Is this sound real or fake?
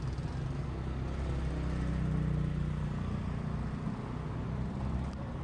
real